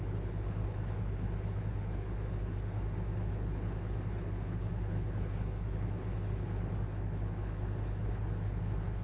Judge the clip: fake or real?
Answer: fake